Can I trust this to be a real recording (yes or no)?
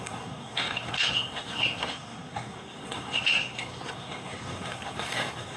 no